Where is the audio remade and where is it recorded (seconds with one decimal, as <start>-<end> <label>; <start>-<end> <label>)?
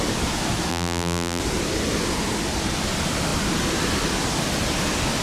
0.0-0.7 recorded; 0.7-1.4 remade; 1.4-5.2 recorded